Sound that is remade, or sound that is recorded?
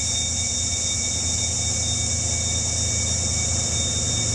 recorded